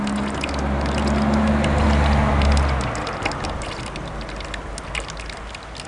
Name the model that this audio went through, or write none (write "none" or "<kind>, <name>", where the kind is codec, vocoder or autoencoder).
none